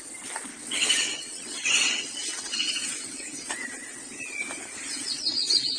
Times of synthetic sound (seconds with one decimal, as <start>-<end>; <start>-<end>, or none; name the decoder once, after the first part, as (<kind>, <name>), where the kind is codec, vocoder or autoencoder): 0.5-3.5 (vocoder, WaveNeXt); 4.9-5.8